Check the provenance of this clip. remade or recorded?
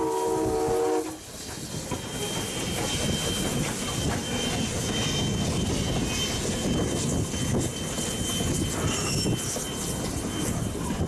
recorded